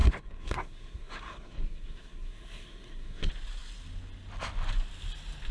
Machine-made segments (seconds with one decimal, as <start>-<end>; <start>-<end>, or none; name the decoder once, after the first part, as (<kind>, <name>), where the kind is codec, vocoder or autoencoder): 0.0-3.3 (codec, SNAC)